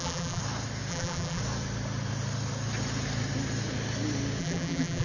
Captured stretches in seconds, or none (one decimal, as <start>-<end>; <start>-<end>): 0.4-0.9; 1.4-4.4